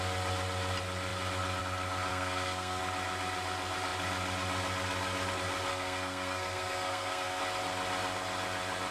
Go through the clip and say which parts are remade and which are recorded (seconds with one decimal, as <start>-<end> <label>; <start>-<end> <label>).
0.0-2.1 recorded; 2.1-2.8 remade; 2.8-5.7 recorded; 5.7-7.4 remade; 7.4-8.9 recorded